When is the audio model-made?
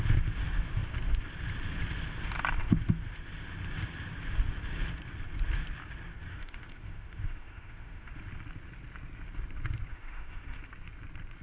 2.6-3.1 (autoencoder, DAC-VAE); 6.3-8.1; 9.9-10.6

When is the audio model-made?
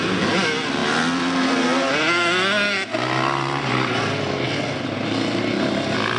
none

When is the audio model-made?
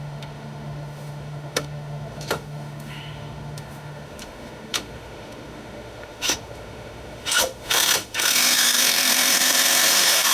0.0-10.3 (autoencoder, DAC-VAE)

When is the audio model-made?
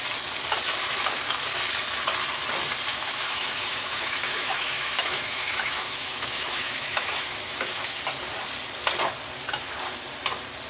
2.9-8.0 (autoencoder, DAC-VAE)